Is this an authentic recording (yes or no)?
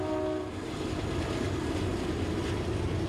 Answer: yes